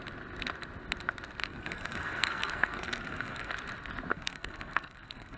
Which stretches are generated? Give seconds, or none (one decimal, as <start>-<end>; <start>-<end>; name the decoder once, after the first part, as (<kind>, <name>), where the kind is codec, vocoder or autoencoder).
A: 1.4-3.5 (codec, SNAC); 4.1-5.4